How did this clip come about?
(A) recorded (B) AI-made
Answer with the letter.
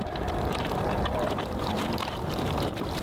B